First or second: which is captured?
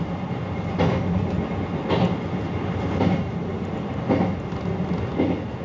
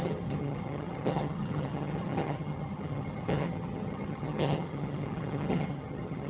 first